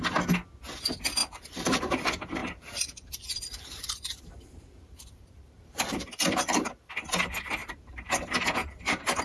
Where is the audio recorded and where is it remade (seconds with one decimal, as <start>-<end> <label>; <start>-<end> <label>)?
0.0-1.2 recorded; 1.2-1.8 remade; 1.8-2.4 recorded; 2.4-6.9 remade; 6.9-7.6 recorded; 7.6-8.2 remade; 8.2-9.2 recorded